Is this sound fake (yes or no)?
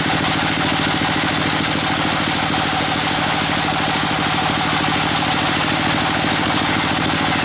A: no